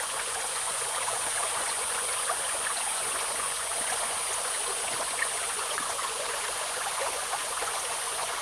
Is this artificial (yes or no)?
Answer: yes